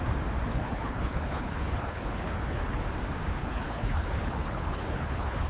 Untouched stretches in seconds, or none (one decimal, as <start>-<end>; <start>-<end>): 0.0-0.5; 2.8-3.4